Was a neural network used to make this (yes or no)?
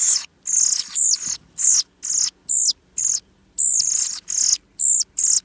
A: no